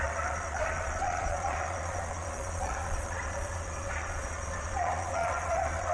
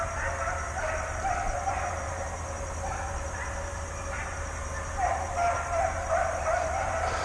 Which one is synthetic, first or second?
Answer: first